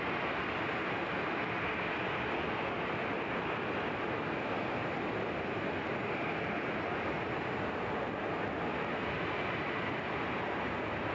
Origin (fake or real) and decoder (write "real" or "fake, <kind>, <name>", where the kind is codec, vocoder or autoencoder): real